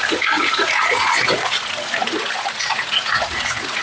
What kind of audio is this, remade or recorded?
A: remade